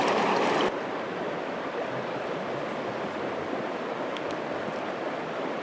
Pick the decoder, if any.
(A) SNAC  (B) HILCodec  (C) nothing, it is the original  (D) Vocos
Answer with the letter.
C